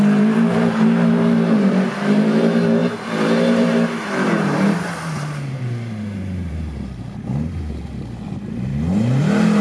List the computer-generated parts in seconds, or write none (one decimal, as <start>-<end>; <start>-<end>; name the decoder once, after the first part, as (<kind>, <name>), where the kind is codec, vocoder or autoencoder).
0.0-8.7 (vocoder, BigVGAN v2); 9.2-9.6